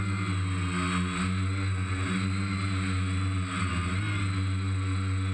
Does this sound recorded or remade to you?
recorded